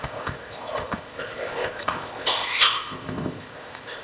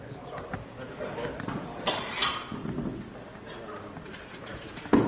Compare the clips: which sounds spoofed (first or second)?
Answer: first